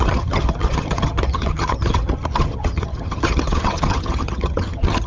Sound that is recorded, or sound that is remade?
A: remade